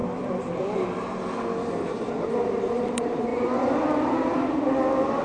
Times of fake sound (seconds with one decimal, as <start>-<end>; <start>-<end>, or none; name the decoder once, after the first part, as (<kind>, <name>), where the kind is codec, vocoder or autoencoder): 2.3-3.3 (vocoder, BigVGAN v2)